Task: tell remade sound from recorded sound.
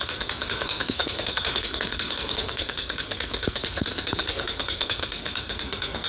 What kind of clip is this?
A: remade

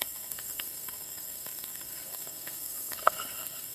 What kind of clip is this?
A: remade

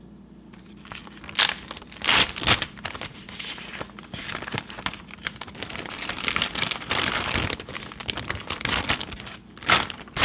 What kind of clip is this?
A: recorded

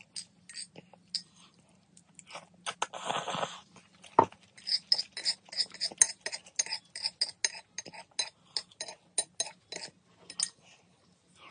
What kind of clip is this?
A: recorded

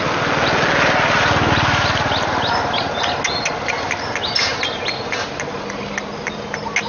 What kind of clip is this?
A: recorded